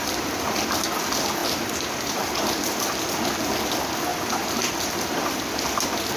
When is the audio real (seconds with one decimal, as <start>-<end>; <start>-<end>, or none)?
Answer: 0.6-1.4; 3.3-4.1; 5.3-6.2